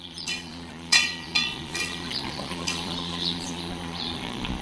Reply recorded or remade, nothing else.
remade